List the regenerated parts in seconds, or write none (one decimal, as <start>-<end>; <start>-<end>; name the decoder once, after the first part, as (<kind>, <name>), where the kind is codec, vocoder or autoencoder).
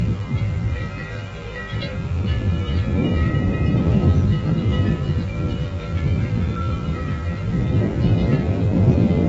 0.0-3.3 (vocoder, BigVGAN v2); 3.8-9.3